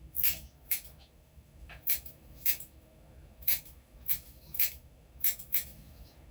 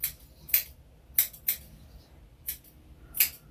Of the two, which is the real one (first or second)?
second